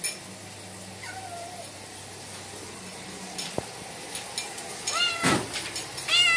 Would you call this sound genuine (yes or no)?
yes